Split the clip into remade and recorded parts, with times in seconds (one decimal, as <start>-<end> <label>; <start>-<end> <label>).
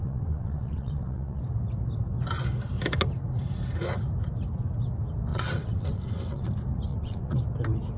0.0-1.4 remade; 1.4-5.3 recorded; 5.3-6.5 remade; 6.5-6.9 recorded; 6.9-7.4 remade; 7.4-8.0 recorded